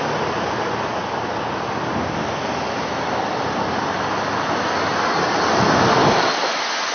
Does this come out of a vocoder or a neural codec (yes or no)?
no